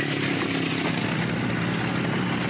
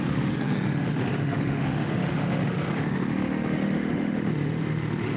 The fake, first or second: second